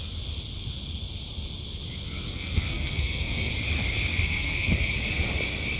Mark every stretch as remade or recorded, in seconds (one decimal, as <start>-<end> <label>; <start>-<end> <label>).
0.0-2.3 recorded; 2.3-3.5 remade; 3.5-4.1 recorded; 4.1-4.9 remade; 4.9-5.8 recorded

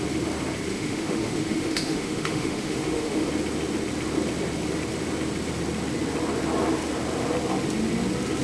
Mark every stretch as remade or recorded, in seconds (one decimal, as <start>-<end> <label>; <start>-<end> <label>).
0.0-0.7 recorded; 0.7-3.3 remade; 3.3-8.4 recorded

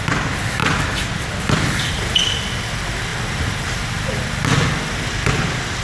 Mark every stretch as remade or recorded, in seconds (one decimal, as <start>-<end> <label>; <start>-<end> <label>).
0.0-5.8 recorded

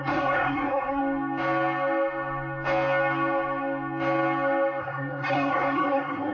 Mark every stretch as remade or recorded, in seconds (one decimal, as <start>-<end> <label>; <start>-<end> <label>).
0.0-1.0 remade; 1.0-4.8 recorded; 4.8-6.3 remade

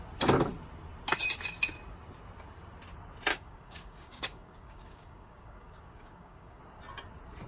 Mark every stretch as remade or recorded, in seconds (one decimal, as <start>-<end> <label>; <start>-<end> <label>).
0.0-3.3 recorded; 3.3-6.6 remade; 6.6-7.5 recorded

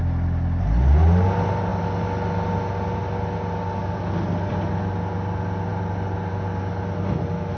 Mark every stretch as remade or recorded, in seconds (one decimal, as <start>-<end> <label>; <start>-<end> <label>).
0.0-7.6 recorded

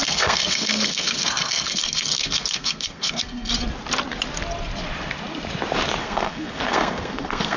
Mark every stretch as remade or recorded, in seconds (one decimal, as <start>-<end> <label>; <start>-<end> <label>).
0.0-3.5 remade; 3.5-6.0 recorded; 6.0-7.6 remade